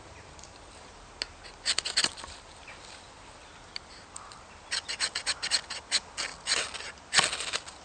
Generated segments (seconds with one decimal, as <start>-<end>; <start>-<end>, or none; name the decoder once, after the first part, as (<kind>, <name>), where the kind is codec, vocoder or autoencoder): none